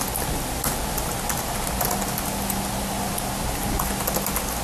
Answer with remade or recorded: recorded